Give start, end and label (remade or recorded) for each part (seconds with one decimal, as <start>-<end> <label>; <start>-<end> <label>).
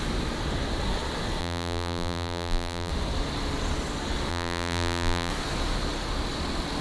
0.0-1.4 recorded; 1.4-2.9 remade; 2.9-4.3 recorded; 4.3-5.3 remade; 5.3-6.8 recorded